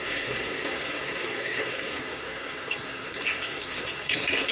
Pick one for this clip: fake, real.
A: fake